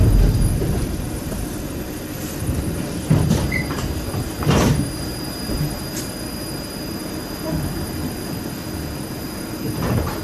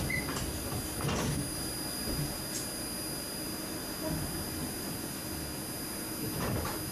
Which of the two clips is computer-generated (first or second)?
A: first